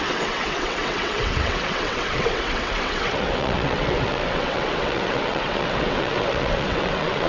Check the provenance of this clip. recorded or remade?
remade